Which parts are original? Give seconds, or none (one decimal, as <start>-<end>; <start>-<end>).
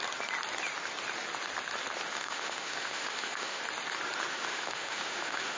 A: 0.0-2.1; 3.6-4.3